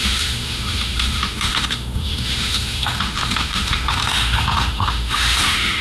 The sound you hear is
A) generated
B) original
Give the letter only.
A